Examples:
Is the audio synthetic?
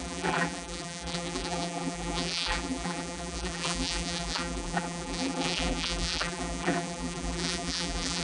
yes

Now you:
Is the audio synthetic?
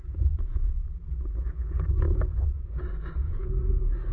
yes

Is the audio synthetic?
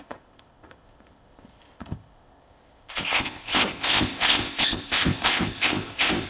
yes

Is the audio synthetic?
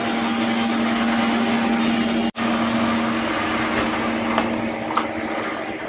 no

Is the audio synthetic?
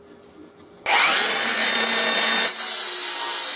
no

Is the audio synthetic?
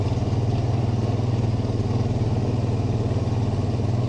no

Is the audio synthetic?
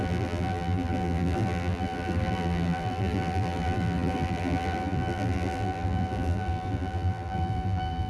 yes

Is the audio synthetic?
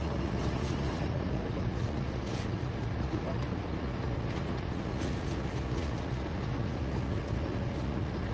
yes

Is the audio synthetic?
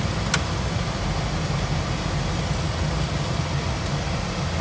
no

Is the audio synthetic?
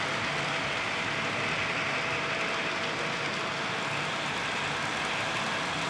no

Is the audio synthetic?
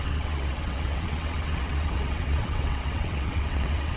yes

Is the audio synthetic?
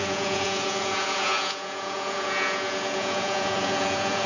yes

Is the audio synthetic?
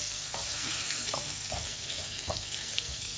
yes